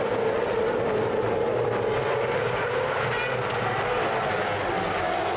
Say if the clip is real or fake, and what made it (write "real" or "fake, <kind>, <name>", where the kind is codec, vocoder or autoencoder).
real